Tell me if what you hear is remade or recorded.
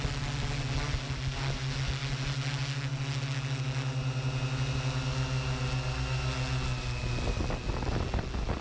recorded